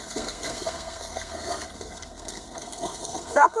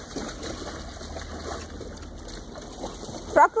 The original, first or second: second